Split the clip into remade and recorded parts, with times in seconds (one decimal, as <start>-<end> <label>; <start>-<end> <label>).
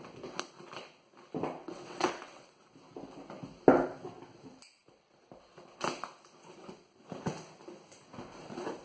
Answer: 0.0-1.6 recorded; 1.6-2.5 remade; 2.5-8.8 recorded